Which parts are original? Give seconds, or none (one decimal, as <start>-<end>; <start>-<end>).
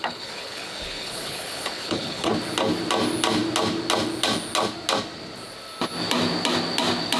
2.3-7.2